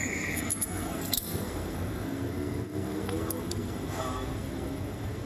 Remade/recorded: remade